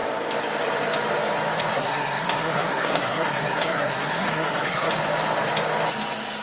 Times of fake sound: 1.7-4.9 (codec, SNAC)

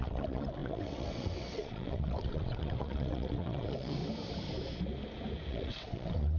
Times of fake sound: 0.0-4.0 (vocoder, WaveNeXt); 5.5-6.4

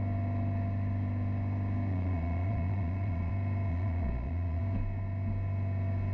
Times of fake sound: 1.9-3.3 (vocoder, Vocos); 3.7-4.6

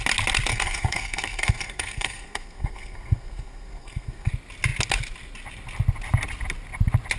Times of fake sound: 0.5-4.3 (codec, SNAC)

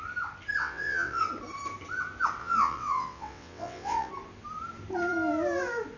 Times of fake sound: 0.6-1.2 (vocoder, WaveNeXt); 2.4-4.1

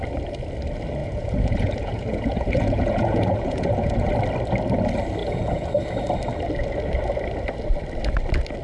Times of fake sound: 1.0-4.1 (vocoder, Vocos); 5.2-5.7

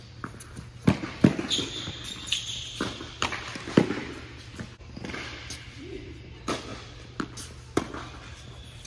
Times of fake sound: none